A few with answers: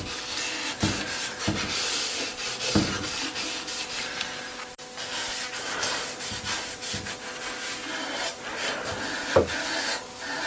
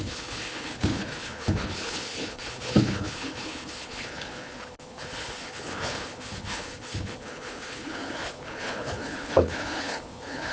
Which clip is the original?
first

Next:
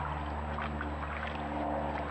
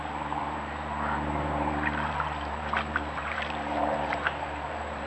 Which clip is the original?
first